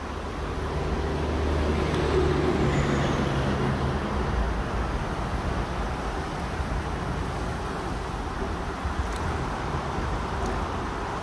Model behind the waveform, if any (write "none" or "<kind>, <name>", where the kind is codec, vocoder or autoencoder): none